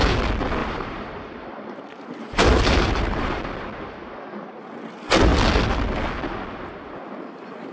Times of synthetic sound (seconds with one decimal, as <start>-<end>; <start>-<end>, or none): 0.6-3.4